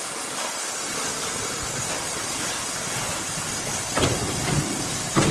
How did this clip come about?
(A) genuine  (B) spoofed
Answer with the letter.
A